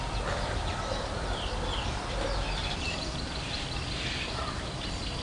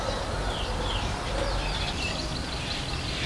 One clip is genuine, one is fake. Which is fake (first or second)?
first